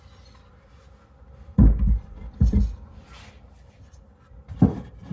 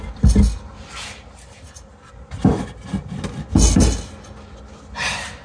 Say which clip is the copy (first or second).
first